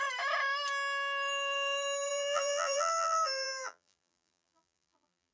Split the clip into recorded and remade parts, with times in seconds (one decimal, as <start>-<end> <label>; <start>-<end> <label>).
0.0-2.1 recorded; 2.1-5.3 remade